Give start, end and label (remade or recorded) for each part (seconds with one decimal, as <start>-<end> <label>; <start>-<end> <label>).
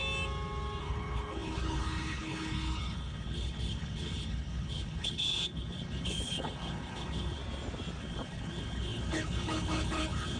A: 0.0-0.8 recorded; 0.8-7.4 remade; 7.4-8.0 recorded; 8.0-10.4 remade